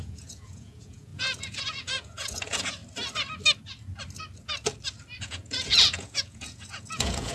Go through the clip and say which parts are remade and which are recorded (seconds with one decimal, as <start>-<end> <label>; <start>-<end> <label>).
0.0-2.8 remade; 2.8-5.2 recorded; 5.2-7.3 remade

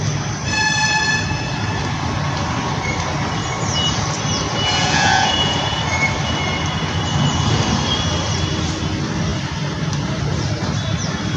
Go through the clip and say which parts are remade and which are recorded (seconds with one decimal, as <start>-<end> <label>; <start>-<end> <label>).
0.0-4.8 recorded; 4.8-5.8 remade; 5.8-11.4 recorded

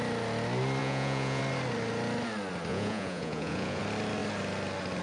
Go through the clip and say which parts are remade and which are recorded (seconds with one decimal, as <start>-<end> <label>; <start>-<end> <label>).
0.0-0.8 recorded; 0.8-1.4 remade; 1.4-2.7 recorded; 2.7-3.8 remade; 3.8-5.0 recorded

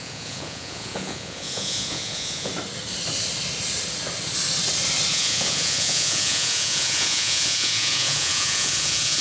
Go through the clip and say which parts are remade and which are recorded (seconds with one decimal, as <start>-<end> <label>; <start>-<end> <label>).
0.0-2.5 remade; 2.5-5.1 recorded; 5.1-9.2 remade

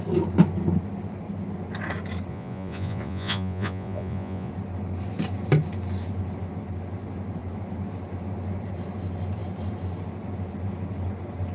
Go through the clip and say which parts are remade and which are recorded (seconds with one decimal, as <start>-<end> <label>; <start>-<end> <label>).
0.0-2.3 recorded; 2.3-4.5 remade; 4.5-11.5 recorded